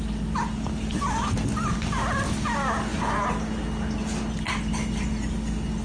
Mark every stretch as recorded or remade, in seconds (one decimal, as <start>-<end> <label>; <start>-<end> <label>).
0.0-5.8 recorded

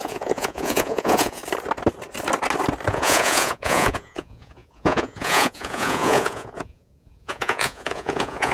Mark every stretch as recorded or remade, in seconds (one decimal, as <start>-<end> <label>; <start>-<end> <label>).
0.0-1.4 remade; 1.4-2.9 recorded; 2.9-8.5 remade

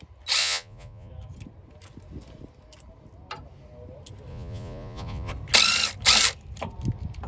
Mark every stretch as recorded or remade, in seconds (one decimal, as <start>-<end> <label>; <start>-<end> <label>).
0.0-0.4 recorded; 0.4-1.1 remade; 1.1-4.3 recorded; 4.3-5.3 remade; 5.3-7.3 recorded

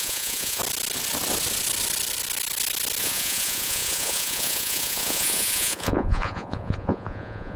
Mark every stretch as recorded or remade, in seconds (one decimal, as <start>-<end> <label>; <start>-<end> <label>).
0.0-0.6 remade; 0.6-3.0 recorded; 3.0-7.6 remade

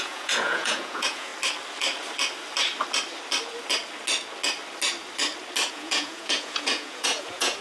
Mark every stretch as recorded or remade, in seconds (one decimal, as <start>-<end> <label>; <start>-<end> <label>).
0.0-1.3 remade; 1.3-5.7 recorded; 5.7-7.6 remade

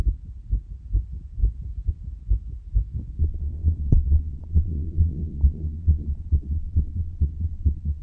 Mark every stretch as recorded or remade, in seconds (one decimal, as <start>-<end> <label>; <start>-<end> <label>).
0.0-3.2 recorded; 3.2-8.0 remade

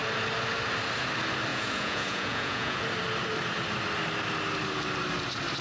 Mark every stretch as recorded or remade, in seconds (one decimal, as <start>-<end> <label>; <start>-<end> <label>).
0.0-1.5 recorded; 1.5-2.8 remade; 2.8-5.6 recorded